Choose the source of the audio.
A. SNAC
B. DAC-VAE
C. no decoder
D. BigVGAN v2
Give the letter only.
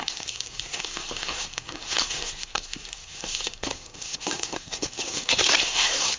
A